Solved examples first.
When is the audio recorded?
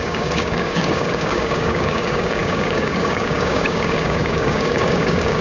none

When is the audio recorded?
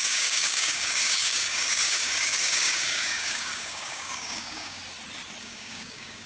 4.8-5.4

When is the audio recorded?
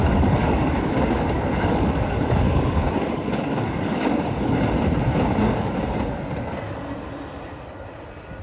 4.5-5.1; 5.9-8.4